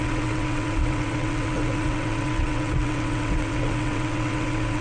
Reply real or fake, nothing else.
fake